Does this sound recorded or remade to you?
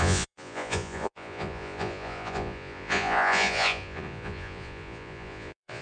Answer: remade